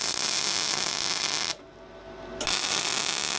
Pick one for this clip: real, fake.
real